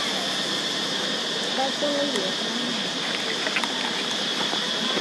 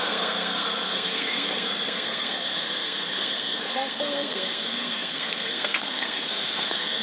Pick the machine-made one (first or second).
second